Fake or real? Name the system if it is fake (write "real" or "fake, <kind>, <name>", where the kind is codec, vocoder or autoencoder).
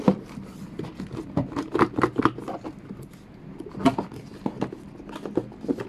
real